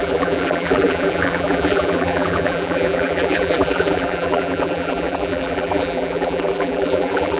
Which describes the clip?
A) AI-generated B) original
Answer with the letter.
A